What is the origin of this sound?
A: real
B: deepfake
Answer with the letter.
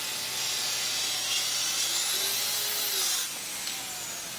A